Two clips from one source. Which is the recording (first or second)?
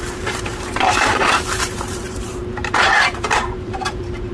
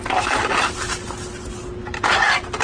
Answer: second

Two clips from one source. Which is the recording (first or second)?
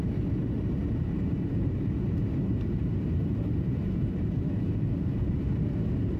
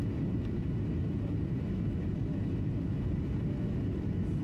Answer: second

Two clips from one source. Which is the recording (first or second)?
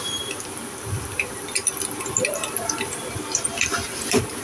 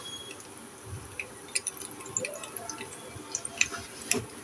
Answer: second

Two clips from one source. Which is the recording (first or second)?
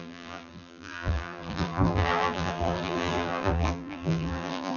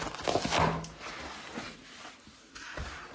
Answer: second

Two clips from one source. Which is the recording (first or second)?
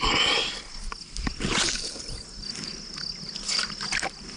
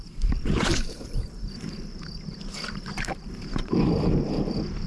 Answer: first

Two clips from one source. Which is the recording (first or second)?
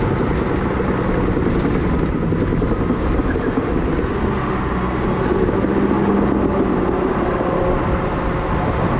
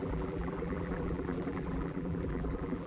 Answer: first